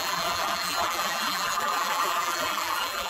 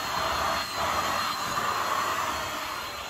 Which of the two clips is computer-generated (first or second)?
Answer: first